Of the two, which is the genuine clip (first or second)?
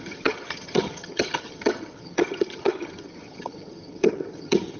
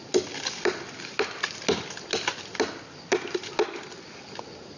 second